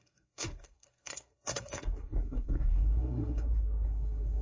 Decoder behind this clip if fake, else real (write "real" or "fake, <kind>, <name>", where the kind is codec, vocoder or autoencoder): fake, codec, SNAC